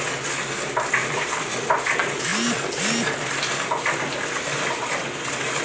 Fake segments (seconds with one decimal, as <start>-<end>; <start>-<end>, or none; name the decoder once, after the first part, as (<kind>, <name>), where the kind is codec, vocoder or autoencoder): 1.0-1.6 (vocoder, BigVGAN v2)

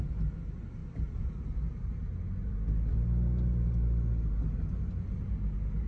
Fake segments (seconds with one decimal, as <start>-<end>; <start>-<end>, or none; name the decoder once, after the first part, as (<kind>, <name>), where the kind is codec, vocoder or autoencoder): none

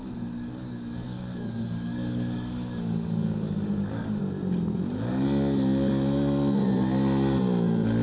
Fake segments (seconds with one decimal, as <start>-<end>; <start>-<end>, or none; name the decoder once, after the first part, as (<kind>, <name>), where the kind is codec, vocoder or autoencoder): 0.0-4.2 (codec, DAC)

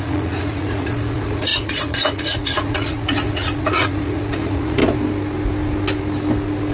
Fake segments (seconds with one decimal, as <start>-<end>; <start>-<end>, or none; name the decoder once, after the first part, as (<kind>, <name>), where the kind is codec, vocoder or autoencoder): 0.0-4.8 (vocoder, Vocos)